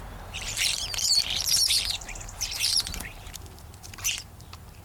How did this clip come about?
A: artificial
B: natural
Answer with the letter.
A